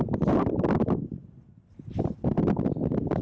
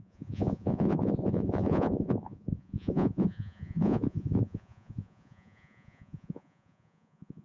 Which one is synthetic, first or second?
second